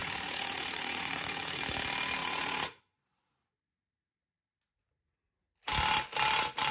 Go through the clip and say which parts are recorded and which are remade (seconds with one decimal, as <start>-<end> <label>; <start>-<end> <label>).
0.0-1.6 remade; 1.6-2.2 recorded; 2.2-2.8 remade; 2.8-6.7 recorded